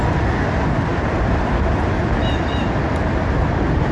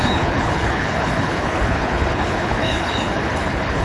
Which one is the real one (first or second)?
first